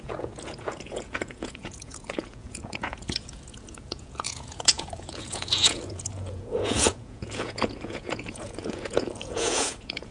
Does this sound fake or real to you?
fake